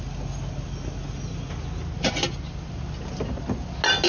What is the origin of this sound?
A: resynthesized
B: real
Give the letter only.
B